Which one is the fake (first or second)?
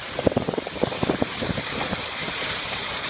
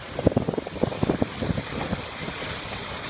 first